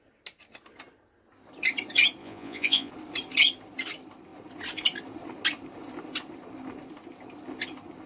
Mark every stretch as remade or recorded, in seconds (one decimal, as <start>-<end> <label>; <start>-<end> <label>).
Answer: 0.0-2.2 recorded; 2.2-2.9 remade; 2.9-8.1 recorded